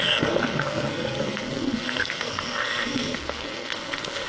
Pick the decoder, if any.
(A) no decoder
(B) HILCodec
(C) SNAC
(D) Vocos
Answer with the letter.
C